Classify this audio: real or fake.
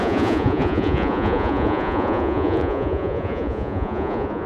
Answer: fake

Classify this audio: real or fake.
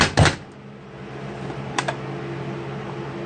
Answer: real